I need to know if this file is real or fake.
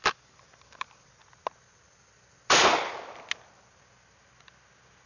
real